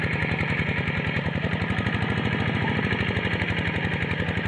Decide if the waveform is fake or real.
real